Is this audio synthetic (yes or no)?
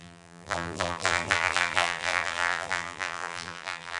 yes